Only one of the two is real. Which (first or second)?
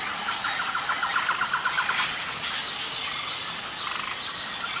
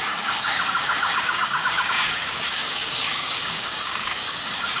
first